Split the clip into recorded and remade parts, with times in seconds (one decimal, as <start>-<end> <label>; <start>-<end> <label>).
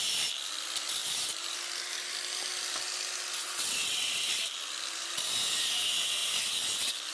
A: 0.0-3.4 recorded; 3.4-4.3 remade; 4.3-7.1 recorded